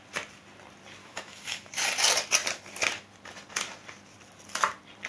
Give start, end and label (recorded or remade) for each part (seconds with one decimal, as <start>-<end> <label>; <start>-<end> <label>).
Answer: 0.0-1.0 recorded; 1.0-1.7 remade; 1.7-5.1 recorded